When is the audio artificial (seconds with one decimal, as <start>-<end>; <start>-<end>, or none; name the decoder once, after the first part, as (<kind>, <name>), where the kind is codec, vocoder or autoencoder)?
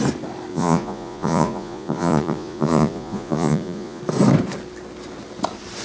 0.5-4.0 (vocoder, Vocos)